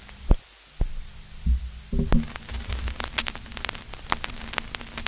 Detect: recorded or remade recorded